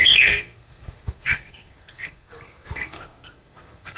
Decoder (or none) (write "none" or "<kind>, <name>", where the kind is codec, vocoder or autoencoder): codec, SNAC